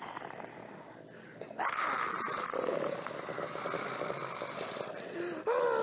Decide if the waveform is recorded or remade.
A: recorded